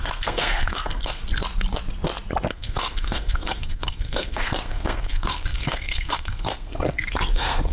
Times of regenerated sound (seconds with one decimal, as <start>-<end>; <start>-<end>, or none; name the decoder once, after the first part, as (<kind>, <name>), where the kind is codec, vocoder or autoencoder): 0.0-1.2 (codec, SNAC); 2.5-7.7